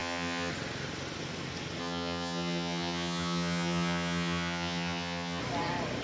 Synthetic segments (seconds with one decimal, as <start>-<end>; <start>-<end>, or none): 0.0-0.5; 1.8-5.4